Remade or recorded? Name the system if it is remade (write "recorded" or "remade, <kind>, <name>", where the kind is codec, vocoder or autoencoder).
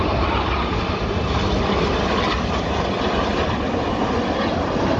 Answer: recorded